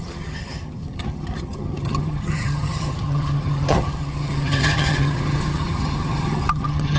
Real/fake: fake